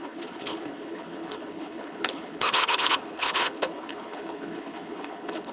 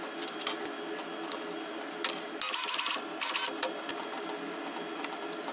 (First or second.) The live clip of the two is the second